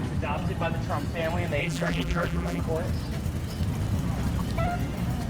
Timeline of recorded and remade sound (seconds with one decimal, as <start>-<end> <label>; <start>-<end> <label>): 0.0-1.6 recorded; 1.6-2.6 remade; 2.6-5.3 recorded